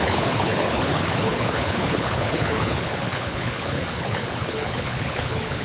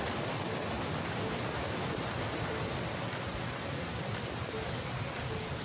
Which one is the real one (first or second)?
second